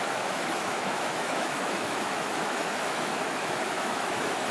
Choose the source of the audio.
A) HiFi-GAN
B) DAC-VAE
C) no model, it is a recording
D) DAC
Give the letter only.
B